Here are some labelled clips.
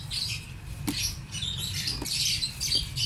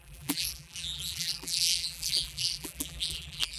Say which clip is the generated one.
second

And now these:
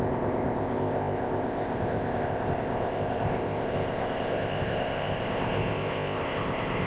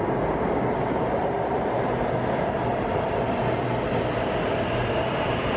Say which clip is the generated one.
first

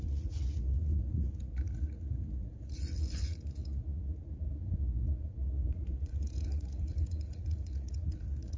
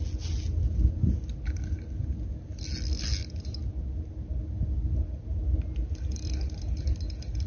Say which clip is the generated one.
first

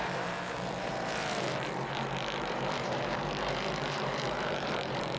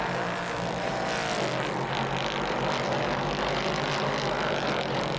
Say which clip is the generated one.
first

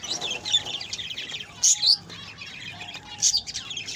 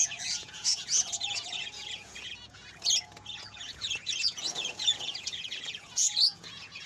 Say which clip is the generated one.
second